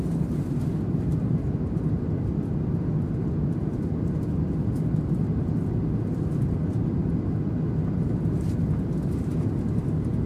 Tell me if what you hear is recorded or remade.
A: recorded